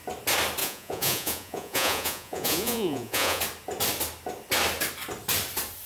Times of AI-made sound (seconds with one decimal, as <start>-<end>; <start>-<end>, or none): 0.6-3.4